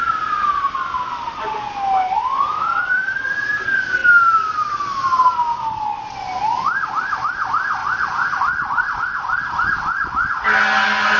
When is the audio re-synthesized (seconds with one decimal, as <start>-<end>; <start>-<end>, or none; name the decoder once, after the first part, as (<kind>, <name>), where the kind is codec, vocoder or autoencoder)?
2.3-3.6 (autoencoder, DAC-VAE)